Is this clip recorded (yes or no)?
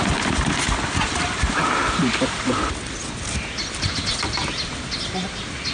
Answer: yes